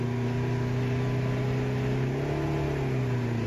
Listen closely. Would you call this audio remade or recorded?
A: recorded